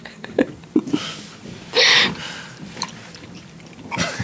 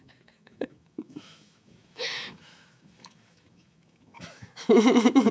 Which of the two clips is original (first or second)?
first